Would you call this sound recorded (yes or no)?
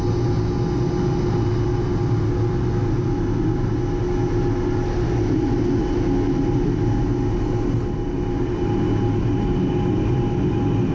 yes